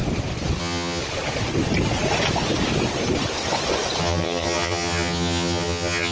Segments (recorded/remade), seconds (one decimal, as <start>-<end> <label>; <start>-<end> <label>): 0.0-0.6 recorded; 0.6-1.0 remade; 1.0-4.0 recorded; 4.0-6.1 remade